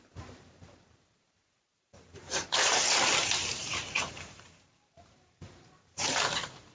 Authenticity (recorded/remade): remade